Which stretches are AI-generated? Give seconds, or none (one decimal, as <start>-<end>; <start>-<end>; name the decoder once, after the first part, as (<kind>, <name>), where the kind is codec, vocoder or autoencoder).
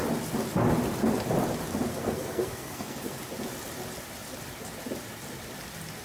1.9-3.2 (codec, SNAC)